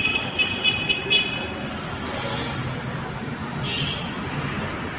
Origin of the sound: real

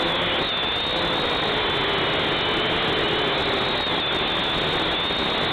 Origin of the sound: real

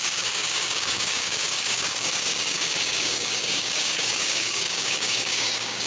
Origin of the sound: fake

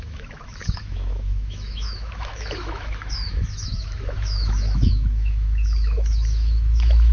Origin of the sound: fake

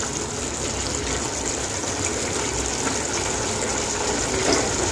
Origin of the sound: real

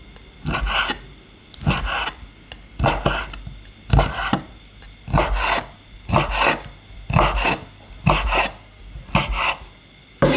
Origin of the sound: real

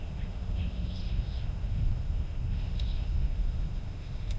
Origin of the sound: fake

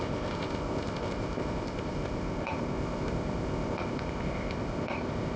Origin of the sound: fake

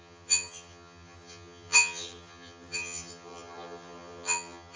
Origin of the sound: fake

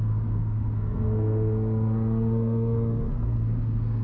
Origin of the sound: fake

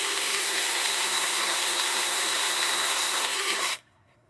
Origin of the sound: fake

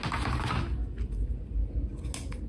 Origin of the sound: real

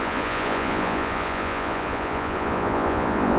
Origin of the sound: fake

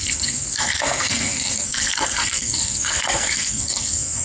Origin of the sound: fake